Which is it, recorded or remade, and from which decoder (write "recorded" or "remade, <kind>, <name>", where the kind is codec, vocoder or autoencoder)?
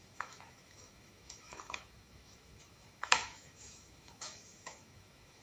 remade, autoencoder, DAC-VAE